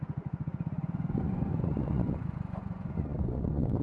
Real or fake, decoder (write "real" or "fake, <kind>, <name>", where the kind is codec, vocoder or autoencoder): fake, vocoder, Vocos